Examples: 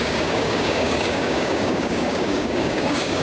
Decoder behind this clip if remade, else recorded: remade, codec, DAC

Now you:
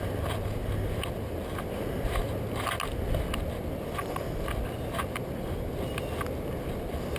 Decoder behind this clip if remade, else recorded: recorded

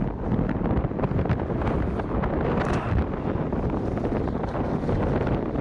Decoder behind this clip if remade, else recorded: recorded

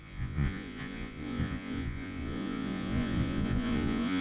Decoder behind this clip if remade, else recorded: remade, vocoder, Vocos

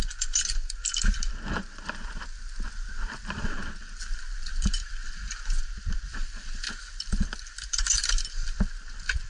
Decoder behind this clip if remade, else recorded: remade, vocoder, BigVGAN v2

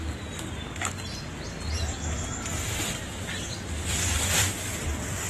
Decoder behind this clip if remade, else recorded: recorded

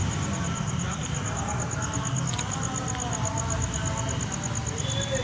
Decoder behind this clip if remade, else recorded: recorded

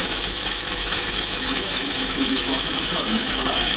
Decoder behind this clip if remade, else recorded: remade, autoencoder, DAC-VAE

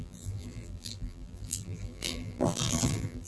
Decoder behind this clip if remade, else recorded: remade, vocoder, BigVGAN v2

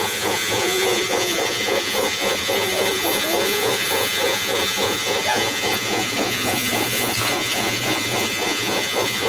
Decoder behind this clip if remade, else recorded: remade, vocoder, Vocos